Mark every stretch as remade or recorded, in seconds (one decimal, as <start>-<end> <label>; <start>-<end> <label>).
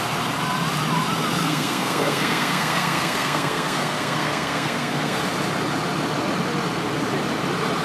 0.0-1.4 recorded; 1.4-5.2 remade; 5.2-7.8 recorded